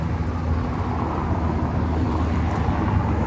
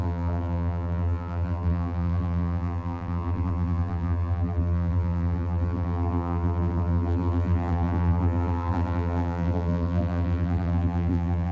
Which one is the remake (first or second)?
second